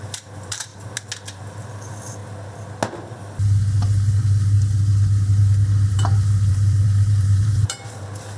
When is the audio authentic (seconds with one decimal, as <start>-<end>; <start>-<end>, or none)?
0.7-1.3; 2.2-6.5